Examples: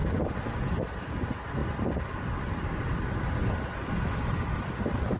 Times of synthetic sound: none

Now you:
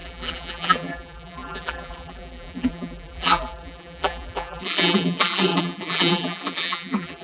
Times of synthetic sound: 0.0-7.2 (vocoder, BigVGAN v2)